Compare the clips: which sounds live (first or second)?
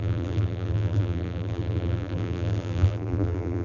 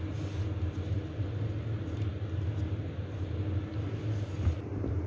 second